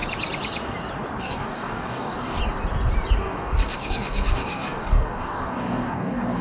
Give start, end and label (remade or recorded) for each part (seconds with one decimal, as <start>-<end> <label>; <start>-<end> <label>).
0.0-1.2 recorded; 1.2-2.4 remade; 2.4-3.2 recorded; 3.2-6.4 remade